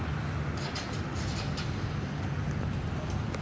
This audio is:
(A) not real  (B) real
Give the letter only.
B